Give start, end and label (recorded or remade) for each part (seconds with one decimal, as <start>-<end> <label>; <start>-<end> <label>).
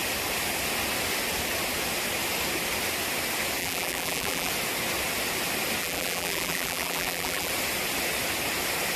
0.0-3.6 recorded; 3.6-4.5 remade; 4.5-5.8 recorded; 5.8-7.5 remade; 7.5-9.0 recorded